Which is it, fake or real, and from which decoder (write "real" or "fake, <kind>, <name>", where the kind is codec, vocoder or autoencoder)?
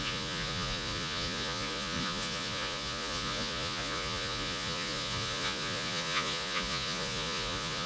fake, vocoder, Vocos